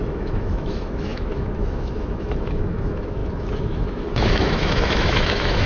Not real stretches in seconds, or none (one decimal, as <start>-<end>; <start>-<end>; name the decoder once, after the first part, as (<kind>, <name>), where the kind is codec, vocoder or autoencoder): 0.0-5.7 (autoencoder, DAC-VAE)